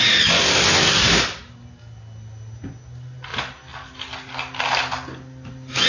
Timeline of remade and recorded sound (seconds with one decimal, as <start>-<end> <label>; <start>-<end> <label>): 0.0-5.9 recorded